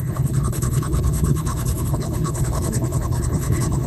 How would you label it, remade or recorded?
remade